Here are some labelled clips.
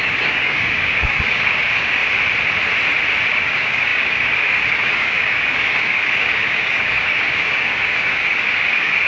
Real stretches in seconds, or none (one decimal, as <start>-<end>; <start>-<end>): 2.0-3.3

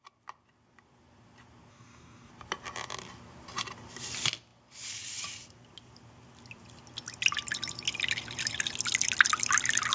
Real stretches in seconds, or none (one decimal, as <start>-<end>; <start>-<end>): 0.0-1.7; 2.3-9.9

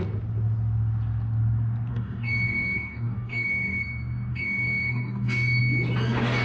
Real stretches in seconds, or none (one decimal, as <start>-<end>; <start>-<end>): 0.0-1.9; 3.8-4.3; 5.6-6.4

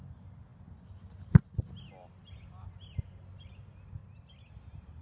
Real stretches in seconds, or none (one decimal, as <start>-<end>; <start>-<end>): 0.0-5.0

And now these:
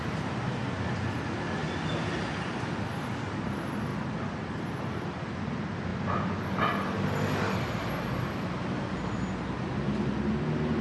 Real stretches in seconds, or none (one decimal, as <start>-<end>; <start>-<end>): 0.0-10.8

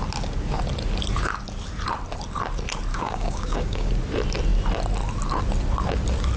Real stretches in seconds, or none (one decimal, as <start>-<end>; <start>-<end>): 0.0-2.9; 3.9-6.4

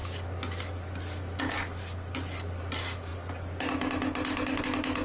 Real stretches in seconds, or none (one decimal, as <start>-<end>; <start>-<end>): 0.0-5.0